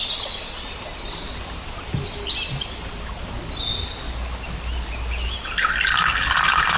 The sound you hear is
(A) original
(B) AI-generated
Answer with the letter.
A